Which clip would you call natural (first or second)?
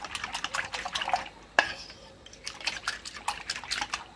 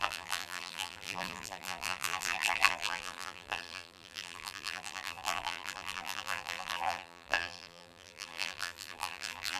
first